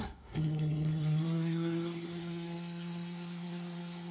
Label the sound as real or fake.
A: fake